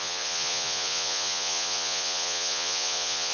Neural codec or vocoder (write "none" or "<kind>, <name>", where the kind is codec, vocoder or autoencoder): vocoder, Vocos